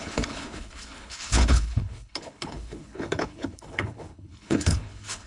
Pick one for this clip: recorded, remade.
remade